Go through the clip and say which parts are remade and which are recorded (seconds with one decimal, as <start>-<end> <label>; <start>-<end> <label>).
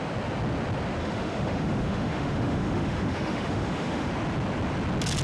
0.0-1.0 recorded; 1.0-4.1 remade; 4.1-5.2 recorded